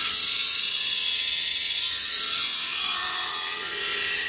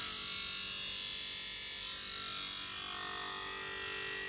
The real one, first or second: second